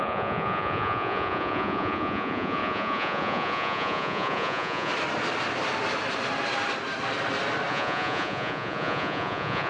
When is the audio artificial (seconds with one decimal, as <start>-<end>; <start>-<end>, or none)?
0.0-4.9; 7.7-9.7